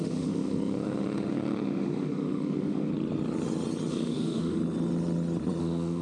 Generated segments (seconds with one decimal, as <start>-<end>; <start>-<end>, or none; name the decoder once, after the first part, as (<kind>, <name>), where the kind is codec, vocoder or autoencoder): 0.0-2.9 (autoencoder, DAC-VAE); 3.9-4.6; 5.6-6.0